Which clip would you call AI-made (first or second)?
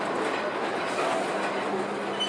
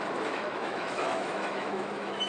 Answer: second